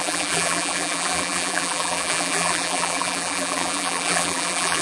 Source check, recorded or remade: remade